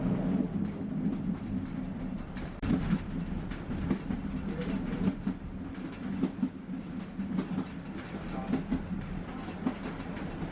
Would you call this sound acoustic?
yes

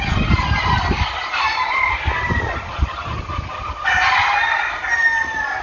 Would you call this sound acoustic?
yes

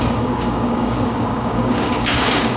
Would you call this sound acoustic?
no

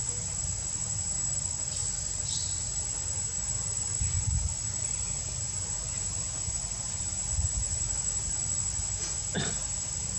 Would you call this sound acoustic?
yes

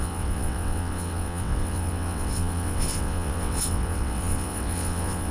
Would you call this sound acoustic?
no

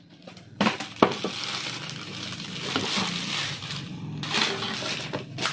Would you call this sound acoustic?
yes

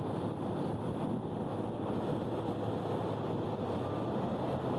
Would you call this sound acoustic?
yes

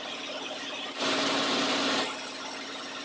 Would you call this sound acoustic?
yes